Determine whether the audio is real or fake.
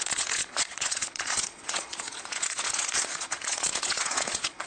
fake